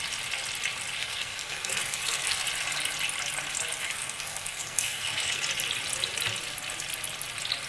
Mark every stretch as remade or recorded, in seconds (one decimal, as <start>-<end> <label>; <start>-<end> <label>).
0.0-1.0 recorded; 1.0-2.4 remade; 2.4-3.8 recorded; 3.8-5.4 remade; 5.4-7.7 recorded